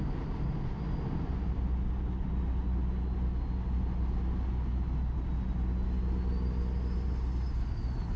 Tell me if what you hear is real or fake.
real